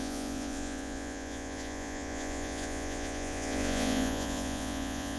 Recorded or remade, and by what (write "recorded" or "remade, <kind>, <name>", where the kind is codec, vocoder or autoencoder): remade, vocoder, Vocos